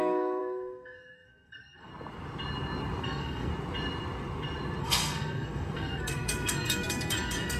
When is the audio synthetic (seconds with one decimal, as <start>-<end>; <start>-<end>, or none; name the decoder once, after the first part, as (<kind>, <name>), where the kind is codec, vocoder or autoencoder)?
0.0-1.9 (codec, SNAC); 3.0-3.5; 4.8-7.6